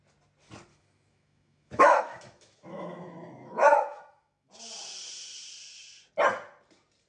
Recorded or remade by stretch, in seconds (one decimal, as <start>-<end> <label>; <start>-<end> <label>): 0.0-0.7 recorded; 0.7-4.5 remade; 4.5-7.1 recorded